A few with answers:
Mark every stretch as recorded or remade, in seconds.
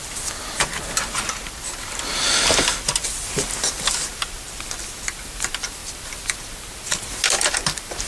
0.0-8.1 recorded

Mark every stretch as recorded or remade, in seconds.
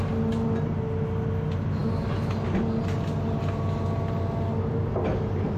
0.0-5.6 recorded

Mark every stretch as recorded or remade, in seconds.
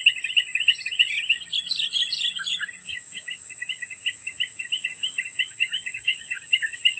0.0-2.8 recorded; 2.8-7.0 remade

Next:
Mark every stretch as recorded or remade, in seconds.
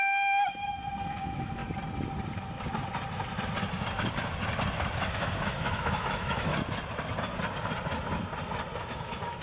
0.0-1.6 remade; 1.6-5.0 recorded; 5.0-6.5 remade; 6.5-8.9 recorded; 8.9-9.4 remade